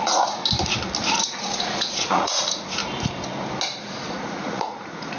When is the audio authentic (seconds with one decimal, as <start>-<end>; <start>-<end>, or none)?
0.4-1.1; 2.8-3.8